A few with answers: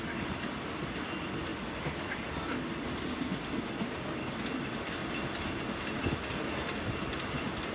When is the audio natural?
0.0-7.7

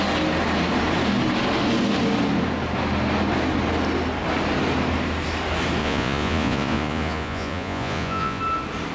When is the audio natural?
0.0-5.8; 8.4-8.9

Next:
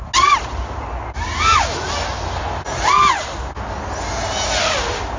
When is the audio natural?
0.0-5.2